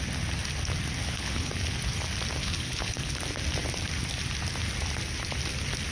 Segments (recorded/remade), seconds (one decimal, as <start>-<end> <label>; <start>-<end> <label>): 0.0-1.0 recorded; 1.0-1.5 remade; 1.5-2.4 recorded; 2.4-3.2 remade; 3.2-5.9 recorded